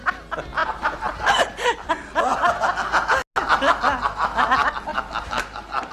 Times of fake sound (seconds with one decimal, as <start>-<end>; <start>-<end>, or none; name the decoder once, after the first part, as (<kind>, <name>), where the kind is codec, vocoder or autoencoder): 0.6-1.9 (vocoder, BigVGAN v2); 4.9-5.9